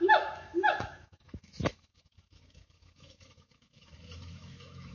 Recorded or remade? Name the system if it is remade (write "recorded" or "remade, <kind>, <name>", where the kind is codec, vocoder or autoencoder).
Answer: remade, autoencoder, DAC-VAE